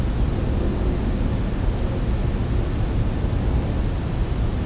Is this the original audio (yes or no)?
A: yes